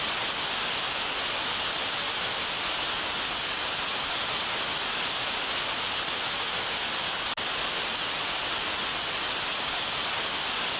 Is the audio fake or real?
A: real